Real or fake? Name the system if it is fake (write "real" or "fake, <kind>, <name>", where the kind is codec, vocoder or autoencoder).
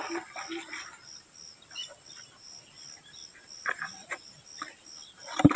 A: real